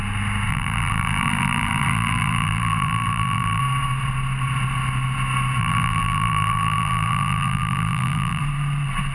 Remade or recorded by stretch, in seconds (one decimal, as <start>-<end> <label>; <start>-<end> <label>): 0.0-0.5 recorded; 0.5-3.6 remade; 3.6-5.6 recorded; 5.6-8.4 remade; 8.4-9.1 recorded